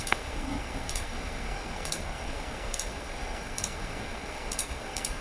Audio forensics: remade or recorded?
remade